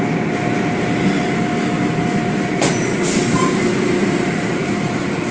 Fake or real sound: real